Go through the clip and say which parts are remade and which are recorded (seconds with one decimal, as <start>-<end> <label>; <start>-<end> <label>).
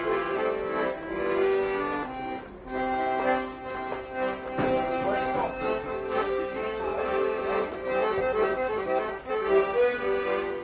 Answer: 0.0-4.9 recorded; 4.9-7.4 remade; 7.4-8.5 recorded; 8.5-9.3 remade; 9.3-10.6 recorded